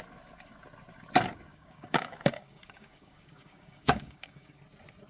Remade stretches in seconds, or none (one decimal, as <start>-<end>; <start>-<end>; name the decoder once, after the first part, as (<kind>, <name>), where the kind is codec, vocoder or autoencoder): 1.5-4.6 (codec, DAC)